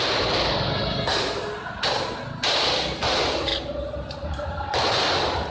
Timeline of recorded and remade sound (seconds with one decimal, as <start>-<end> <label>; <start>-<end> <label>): 0.0-5.5 recorded